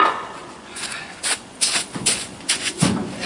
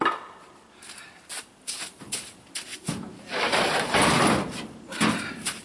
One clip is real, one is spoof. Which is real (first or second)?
second